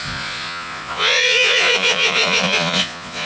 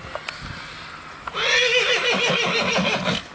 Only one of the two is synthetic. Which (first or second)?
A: first